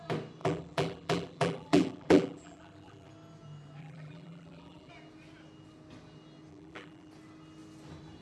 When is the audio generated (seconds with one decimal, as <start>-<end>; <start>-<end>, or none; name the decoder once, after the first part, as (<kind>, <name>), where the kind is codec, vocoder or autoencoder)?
0.4-3.1 (vocoder, BigVGAN v2); 3.8-4.9; 6.5-7.1